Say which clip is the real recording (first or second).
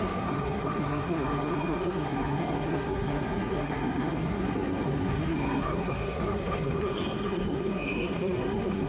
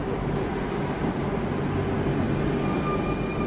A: second